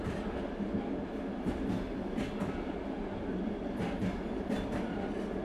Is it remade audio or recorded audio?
recorded